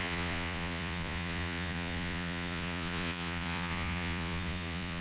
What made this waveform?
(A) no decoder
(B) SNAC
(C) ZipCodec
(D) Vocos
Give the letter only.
D